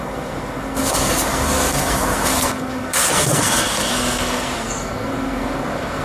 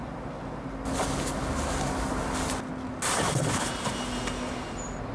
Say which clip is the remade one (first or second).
first